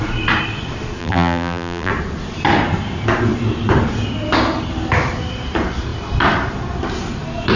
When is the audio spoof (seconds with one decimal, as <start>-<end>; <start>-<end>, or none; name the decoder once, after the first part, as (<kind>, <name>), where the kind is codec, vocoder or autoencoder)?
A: 1.0-1.9 (vocoder, BigVGAN v2)